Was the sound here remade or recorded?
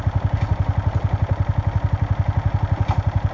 recorded